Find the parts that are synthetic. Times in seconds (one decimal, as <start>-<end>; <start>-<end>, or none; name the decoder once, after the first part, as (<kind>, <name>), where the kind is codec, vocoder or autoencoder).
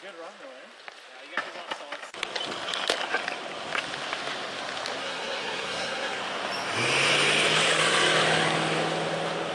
5.0-6.2 (codec, SNAC)